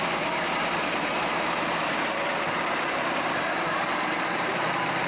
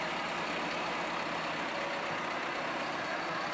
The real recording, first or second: second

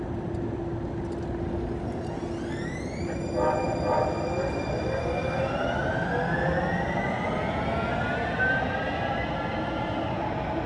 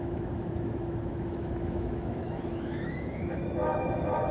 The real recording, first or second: first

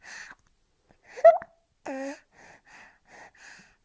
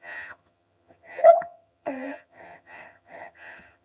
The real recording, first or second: first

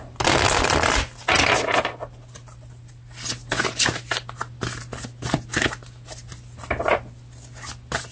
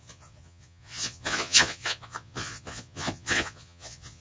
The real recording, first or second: first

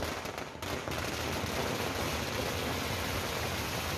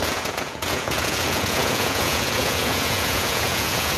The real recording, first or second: first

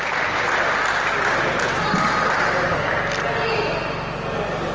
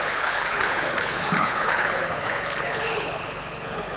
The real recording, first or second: first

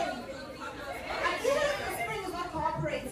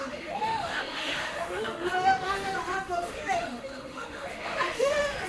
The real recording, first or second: first